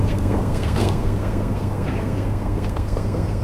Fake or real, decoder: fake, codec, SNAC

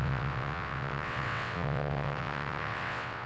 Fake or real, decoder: fake, vocoder, WaveNeXt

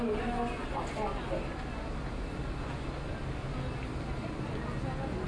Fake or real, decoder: real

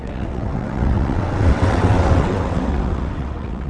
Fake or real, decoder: fake, vocoder, WaveNeXt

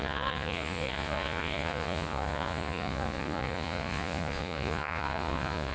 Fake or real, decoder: fake, vocoder, Vocos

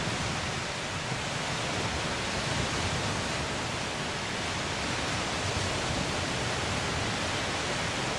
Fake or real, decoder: real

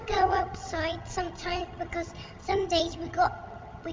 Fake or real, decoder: fake, vocoder, HiFi-GAN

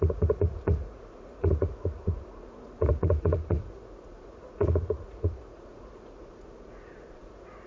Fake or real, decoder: fake, vocoder, Vocos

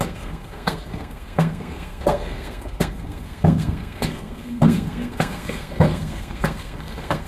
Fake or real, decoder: fake, codec, SNAC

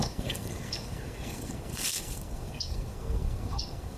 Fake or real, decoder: fake, codec, SNAC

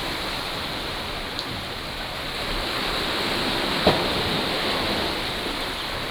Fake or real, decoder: fake, vocoder, BigVGAN v2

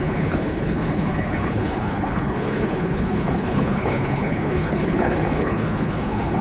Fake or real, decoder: fake, codec, HILCodec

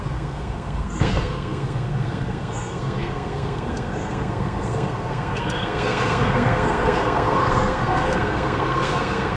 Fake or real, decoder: fake, codec, SNAC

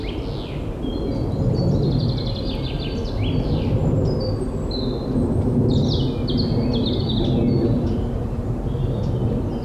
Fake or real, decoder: real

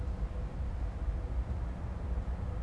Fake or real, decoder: real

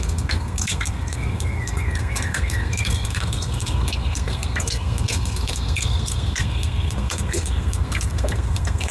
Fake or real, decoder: fake, codec, SNAC